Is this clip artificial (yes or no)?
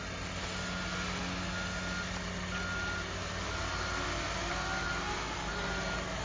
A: no